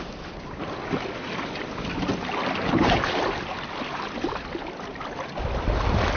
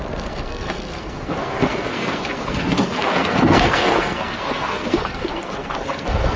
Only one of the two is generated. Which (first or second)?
second